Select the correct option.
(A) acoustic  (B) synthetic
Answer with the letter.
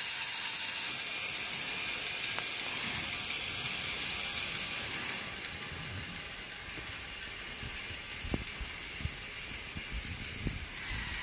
A